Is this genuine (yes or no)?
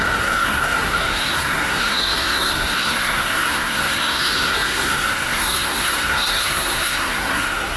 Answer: no